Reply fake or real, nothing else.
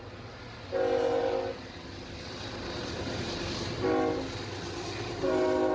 real